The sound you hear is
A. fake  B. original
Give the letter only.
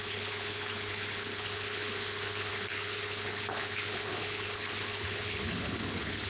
A